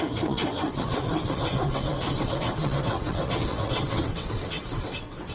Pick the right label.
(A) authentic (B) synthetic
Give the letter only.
B